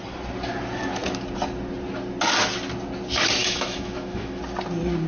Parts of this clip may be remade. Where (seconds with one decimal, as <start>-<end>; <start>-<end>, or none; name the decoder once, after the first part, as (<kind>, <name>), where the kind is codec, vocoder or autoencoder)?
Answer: 3.4-4.4 (autoencoder, DAC-VAE)